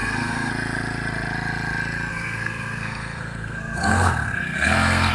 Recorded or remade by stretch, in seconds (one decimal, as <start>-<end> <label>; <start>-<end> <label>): 0.0-0.5 remade; 0.5-2.1 recorded; 2.1-5.1 remade